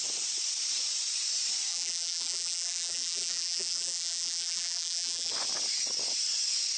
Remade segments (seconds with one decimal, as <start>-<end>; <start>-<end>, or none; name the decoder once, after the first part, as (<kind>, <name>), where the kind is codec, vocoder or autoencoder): 1.7-5.3 (vocoder, BigVGAN v2)